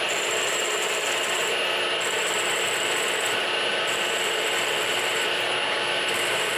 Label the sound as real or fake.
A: fake